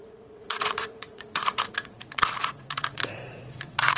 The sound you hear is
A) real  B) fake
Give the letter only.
B